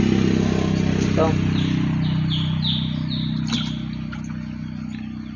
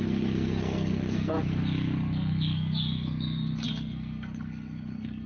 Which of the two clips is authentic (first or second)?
first